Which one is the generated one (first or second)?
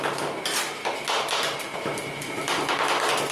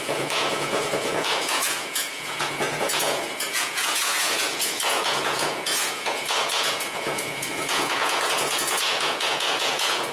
second